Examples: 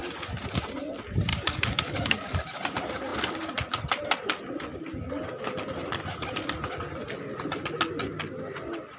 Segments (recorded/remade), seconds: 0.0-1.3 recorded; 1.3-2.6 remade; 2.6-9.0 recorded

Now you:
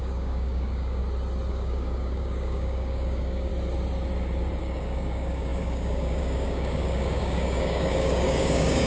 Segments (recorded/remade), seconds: 0.0-1.0 remade; 1.0-1.5 recorded; 1.5-3.5 remade; 3.5-4.6 recorded; 4.6-8.9 remade

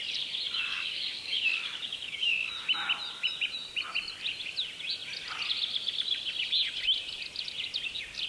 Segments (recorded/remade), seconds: 0.0-0.7 recorded; 0.7-2.5 remade; 2.5-8.3 recorded